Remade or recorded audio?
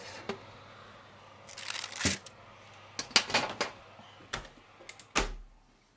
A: recorded